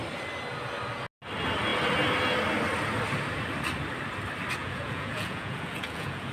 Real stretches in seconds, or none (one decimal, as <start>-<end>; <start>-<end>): 0.0-4.6